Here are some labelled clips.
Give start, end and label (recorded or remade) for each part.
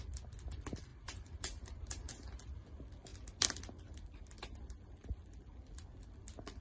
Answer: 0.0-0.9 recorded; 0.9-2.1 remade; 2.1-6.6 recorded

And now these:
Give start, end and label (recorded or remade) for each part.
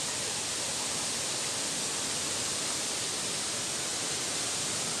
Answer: 0.0-5.0 recorded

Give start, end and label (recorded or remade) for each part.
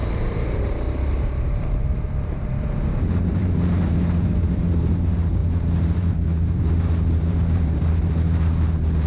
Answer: 0.0-9.1 remade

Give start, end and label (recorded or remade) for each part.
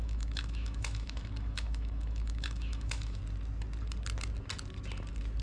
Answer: 0.0-3.2 remade; 3.2-5.4 recorded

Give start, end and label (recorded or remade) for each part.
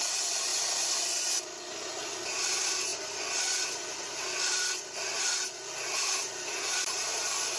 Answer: 0.0-7.6 recorded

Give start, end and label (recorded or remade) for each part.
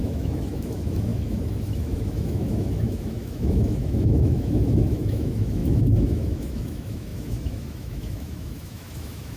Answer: 0.0-9.4 remade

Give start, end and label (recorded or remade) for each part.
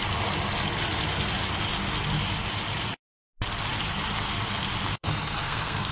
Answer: 0.0-4.9 recorded; 4.9-5.9 remade